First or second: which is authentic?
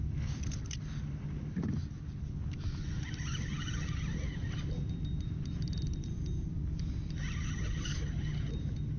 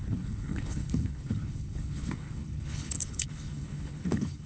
first